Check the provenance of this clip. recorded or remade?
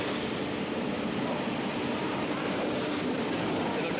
remade